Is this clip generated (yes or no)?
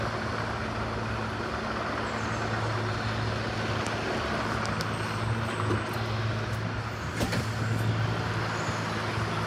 no